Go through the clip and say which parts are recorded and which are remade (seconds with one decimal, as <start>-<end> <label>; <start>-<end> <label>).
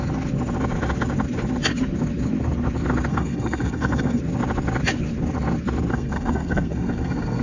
0.0-3.1 recorded; 3.1-4.2 remade; 4.2-5.9 recorded; 5.9-7.4 remade